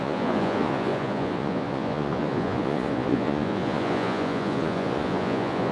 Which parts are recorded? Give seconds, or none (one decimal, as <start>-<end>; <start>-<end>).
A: none